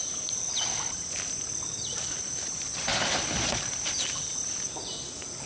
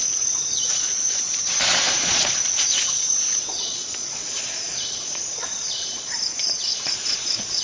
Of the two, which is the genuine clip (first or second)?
first